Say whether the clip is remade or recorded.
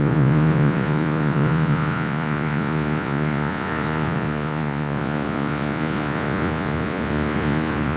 remade